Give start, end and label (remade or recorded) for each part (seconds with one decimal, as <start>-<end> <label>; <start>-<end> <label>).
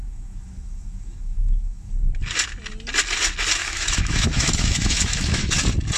0.0-1.9 remade; 1.9-3.6 recorded; 3.6-5.5 remade; 5.5-6.0 recorded